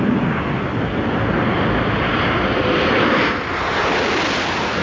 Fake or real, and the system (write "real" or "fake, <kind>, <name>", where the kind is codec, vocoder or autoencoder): real